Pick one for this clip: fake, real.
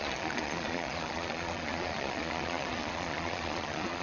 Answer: fake